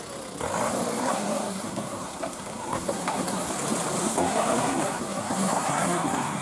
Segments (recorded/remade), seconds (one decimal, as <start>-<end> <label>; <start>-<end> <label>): 0.0-1.0 recorded; 1.0-3.5 remade; 3.5-4.0 recorded; 4.0-6.4 remade